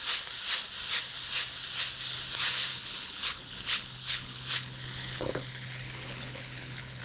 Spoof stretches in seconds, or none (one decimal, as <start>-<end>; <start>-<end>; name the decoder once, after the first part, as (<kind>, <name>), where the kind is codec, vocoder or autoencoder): 2.7-7.0 (codec, HILCodec)